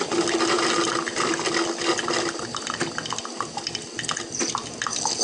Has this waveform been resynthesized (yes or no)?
no